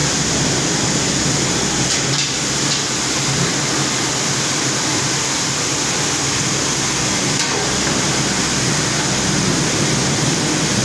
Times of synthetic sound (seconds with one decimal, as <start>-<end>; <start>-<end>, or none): none